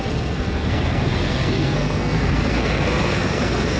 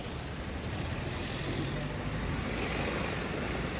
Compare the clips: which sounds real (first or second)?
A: second